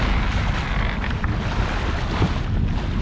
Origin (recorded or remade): recorded